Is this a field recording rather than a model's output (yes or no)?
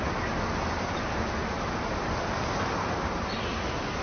yes